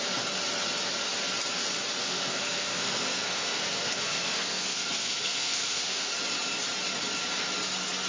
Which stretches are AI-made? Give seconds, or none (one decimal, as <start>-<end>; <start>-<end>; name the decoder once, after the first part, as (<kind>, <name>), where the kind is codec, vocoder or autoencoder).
2.0-6.1 (codec, SNAC)